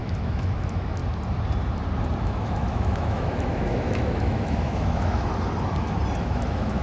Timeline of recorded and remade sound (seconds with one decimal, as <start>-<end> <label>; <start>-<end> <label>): 0.0-1.0 remade; 1.0-2.2 recorded; 2.2-5.3 remade; 5.3-6.2 recorded; 6.2-6.8 remade